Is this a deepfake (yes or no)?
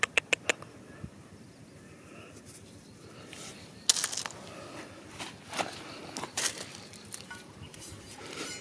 no